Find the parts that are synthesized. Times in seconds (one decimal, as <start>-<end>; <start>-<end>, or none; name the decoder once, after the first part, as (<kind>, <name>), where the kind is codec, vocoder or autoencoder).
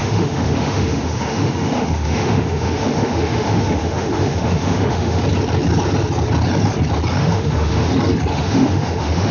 0.0-5.2 (autoencoder, DAC-VAE); 7.2-7.9; 8.3-9.3